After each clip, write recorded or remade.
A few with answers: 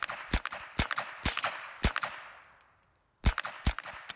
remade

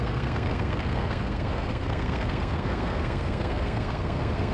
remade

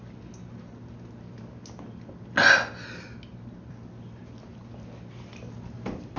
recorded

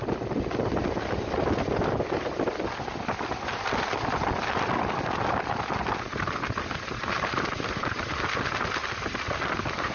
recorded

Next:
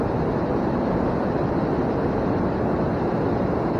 recorded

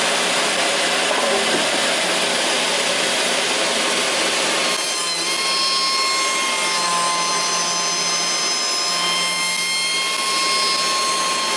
recorded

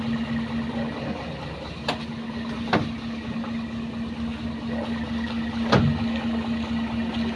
recorded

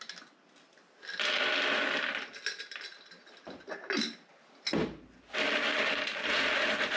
recorded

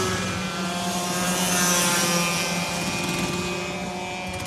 recorded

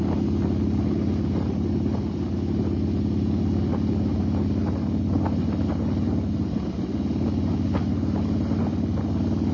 recorded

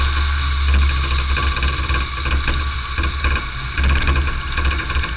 recorded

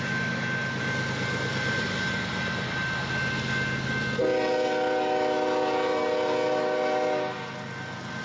recorded